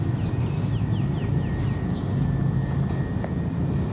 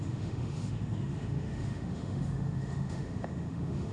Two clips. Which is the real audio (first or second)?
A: first